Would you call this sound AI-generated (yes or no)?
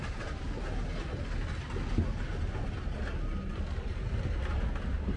no